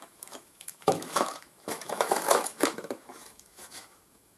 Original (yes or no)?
no